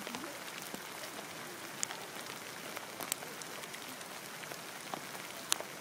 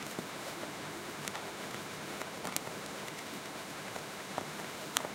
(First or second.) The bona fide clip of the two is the first